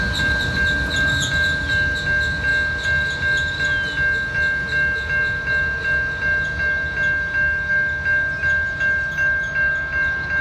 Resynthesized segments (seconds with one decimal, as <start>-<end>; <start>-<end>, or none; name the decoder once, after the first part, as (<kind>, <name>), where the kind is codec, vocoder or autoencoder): none